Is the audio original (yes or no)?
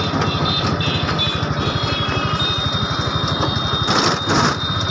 yes